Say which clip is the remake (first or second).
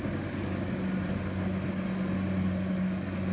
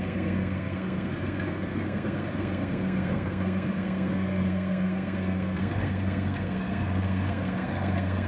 second